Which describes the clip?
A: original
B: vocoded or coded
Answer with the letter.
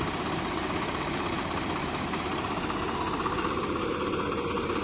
B